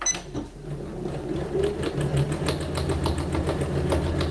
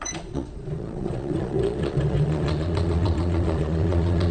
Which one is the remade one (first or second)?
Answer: second